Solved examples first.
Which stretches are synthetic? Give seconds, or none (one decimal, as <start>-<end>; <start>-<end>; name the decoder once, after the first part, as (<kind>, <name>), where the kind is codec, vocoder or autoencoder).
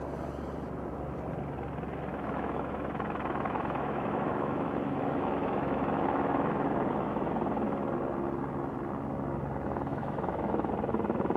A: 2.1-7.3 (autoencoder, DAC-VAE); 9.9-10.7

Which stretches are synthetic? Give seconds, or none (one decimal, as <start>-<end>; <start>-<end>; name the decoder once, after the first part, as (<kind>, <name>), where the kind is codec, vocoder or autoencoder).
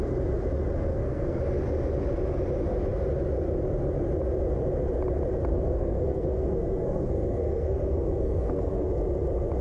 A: 0.9-1.4 (codec, SNAC); 5.5-8.9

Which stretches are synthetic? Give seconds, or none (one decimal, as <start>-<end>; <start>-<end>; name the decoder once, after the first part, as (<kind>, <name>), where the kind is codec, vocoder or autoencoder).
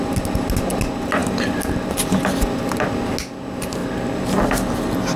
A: none